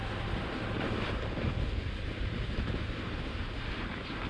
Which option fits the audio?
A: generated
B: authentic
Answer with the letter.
B